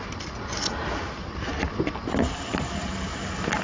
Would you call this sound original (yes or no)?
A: yes